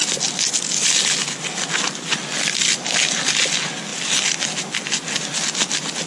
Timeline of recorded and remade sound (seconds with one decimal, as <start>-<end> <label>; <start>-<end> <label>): 0.0-6.1 recorded